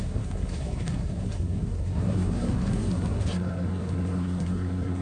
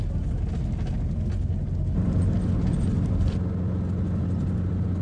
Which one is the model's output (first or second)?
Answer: first